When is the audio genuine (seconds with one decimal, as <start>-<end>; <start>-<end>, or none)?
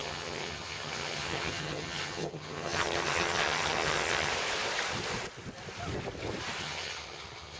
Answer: 4.3-6.6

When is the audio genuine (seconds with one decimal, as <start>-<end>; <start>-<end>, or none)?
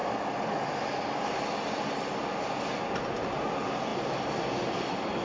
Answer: 0.0-5.2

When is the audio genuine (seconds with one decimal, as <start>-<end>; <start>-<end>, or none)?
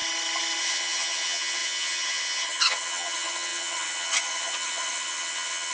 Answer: 0.0-0.6